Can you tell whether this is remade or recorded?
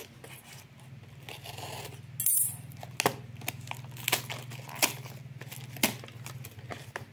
recorded